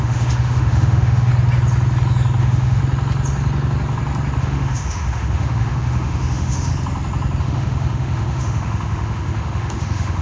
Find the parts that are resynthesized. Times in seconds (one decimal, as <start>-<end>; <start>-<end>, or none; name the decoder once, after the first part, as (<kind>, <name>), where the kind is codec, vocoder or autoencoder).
0.0-1.3 (autoencoder, DAC-VAE); 2.4-2.8; 4.4-6.7; 7.4-10.2